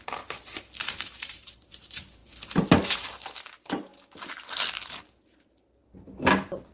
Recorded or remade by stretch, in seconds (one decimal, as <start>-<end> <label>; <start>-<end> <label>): 0.0-2.2 remade; 2.2-3.1 recorded; 3.1-3.9 remade; 3.9-4.8 recorded; 4.8-5.8 remade; 5.8-6.7 recorded